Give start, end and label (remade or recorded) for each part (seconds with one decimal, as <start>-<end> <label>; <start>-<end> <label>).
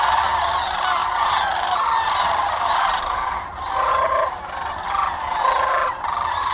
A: 0.0-6.5 recorded